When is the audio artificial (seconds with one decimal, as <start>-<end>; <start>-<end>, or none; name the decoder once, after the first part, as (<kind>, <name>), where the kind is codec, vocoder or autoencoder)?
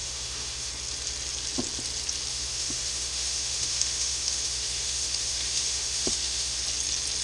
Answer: 0.0-0.7 (autoencoder, DAC-VAE); 2.3-6.6